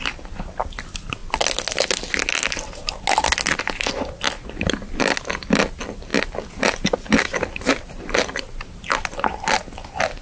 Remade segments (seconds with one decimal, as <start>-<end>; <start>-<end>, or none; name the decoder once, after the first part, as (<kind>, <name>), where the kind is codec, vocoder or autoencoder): none